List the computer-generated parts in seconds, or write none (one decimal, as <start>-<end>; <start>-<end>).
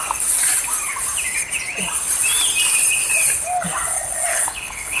4.3-5.0